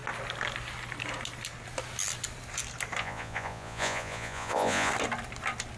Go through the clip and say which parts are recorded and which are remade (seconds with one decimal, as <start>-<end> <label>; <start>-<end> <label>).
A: 0.0-3.0 recorded; 3.0-4.9 remade; 4.9-5.8 recorded